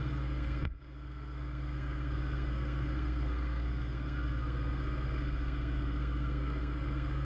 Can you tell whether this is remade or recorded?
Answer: remade